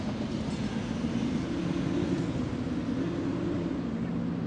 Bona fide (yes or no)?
yes